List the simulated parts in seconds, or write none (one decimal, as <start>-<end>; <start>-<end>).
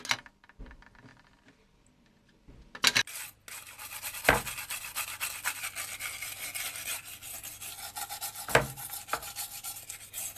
none